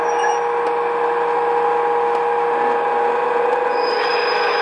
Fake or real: real